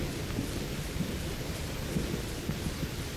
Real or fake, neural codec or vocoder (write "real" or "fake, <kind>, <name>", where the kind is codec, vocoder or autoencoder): real